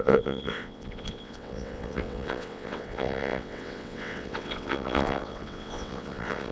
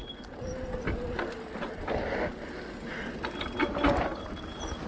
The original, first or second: second